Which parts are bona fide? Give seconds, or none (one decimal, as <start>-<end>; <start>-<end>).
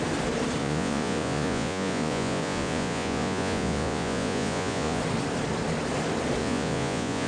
0.0-0.6; 5.0-6.4